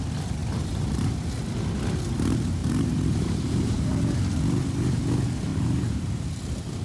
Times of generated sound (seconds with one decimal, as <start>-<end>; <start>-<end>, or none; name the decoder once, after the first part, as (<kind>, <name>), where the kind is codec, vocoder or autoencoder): 0.4-1.1 (vocoder, BigVGAN v2); 2.6-3.9; 5.5-6.3